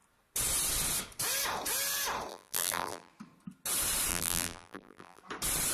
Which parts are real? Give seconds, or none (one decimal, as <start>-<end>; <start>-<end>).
0.0-2.3; 3.1-4.1; 5.2-5.7